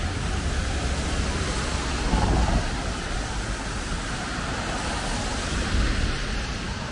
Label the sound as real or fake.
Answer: real